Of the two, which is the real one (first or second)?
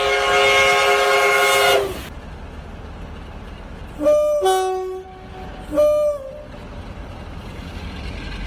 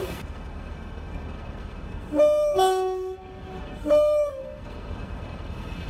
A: first